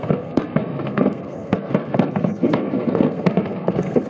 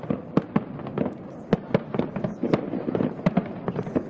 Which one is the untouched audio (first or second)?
second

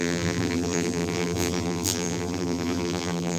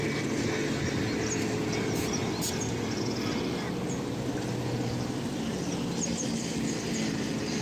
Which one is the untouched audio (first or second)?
second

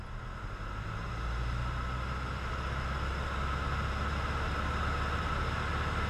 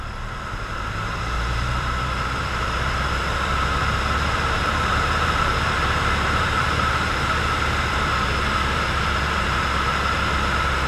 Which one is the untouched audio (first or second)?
first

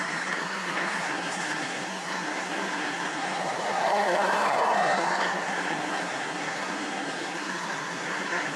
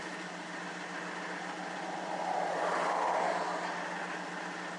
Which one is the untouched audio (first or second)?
second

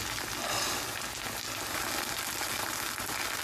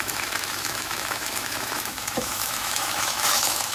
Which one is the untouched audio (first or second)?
first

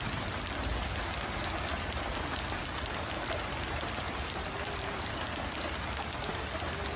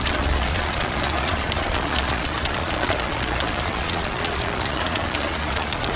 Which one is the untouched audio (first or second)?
first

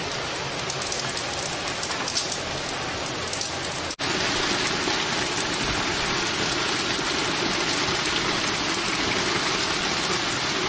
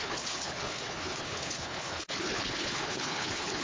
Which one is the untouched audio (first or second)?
first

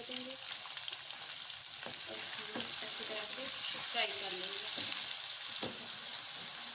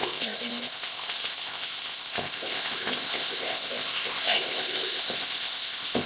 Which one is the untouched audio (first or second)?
first